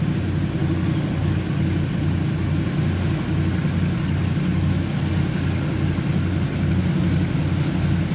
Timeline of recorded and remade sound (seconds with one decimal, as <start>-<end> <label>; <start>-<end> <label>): 0.0-8.1 recorded